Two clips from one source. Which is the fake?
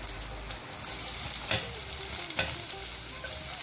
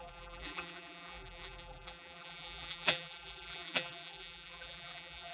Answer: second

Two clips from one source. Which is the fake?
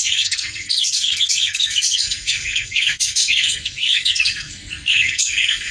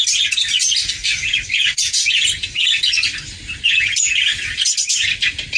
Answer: first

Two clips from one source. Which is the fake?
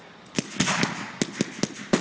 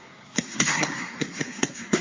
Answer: second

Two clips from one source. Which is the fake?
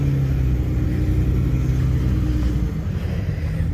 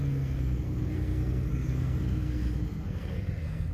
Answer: second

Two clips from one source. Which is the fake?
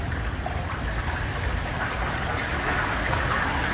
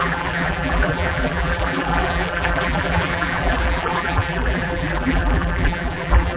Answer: second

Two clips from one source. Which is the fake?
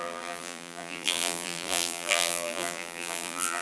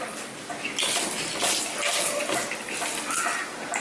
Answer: first